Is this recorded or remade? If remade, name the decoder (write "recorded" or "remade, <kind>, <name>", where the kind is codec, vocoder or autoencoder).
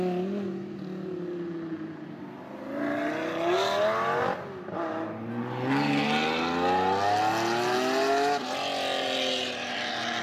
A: recorded